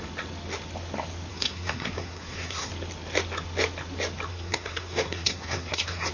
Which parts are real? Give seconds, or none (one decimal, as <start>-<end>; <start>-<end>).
0.0-1.3; 2.7-4.3